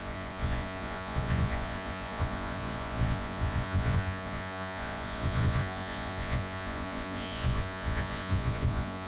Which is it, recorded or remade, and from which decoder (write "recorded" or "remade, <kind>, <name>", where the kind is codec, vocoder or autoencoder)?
remade, vocoder, Vocos